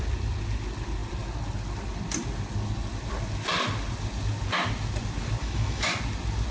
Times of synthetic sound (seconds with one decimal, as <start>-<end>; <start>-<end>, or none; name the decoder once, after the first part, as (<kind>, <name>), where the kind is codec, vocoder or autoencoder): 5.4-5.9 (autoencoder, DAC-VAE)